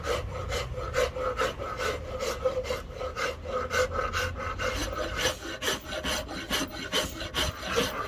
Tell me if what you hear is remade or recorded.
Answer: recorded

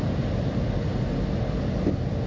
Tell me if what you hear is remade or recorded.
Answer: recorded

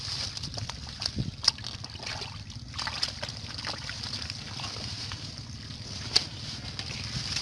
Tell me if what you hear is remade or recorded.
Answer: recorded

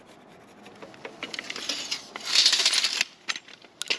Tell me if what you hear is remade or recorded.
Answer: recorded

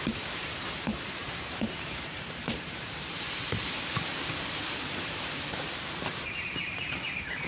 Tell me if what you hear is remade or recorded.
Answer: remade